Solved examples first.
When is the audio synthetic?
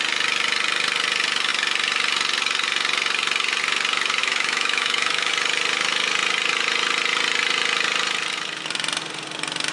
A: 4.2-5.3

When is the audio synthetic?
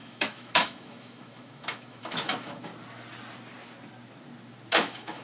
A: 0.0-2.7; 4.7-5.2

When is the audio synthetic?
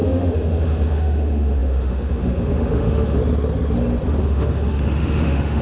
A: 0.0-3.2; 4.2-5.6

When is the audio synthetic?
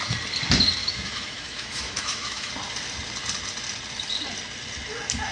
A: 0.8-2.5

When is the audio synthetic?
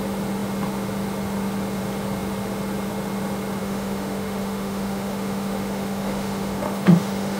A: 3.6-7.4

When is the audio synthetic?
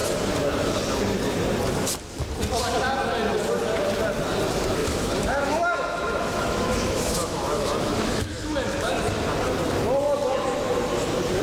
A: 4.8-9.0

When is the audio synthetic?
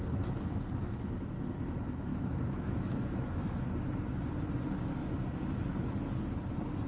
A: 2.1-3.6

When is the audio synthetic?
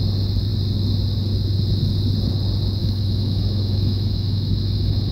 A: 2.8-5.1